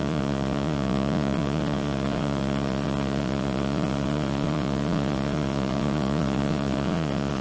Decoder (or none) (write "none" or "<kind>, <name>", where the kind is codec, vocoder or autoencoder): vocoder, Vocos